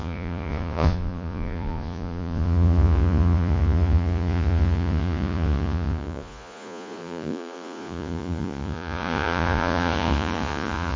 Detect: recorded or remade remade